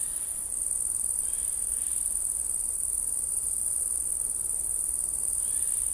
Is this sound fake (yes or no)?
no